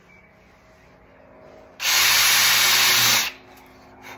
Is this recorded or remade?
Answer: recorded